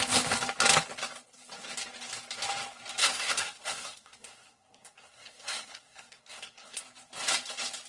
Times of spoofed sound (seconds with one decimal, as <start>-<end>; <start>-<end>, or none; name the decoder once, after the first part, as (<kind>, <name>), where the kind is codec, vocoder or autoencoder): 3.0-6.8 (codec, SNAC)